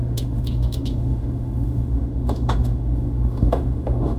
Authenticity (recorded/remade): remade